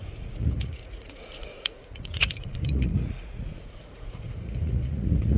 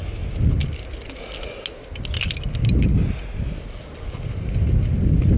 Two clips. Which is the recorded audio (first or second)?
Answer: second